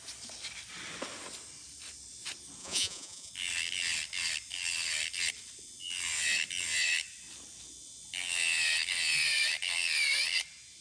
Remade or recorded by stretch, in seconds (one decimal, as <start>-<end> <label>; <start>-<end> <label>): 0.0-2.6 recorded; 2.6-3.3 remade; 3.3-10.8 recorded